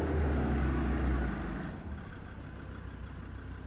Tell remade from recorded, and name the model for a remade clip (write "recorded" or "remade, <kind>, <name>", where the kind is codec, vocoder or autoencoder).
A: recorded